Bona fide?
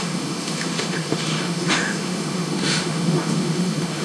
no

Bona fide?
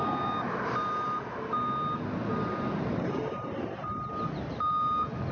yes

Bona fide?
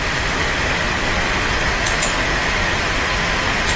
yes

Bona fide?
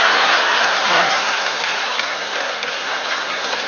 no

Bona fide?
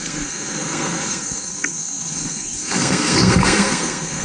no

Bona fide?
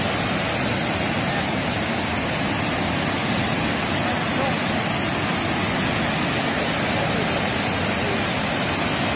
yes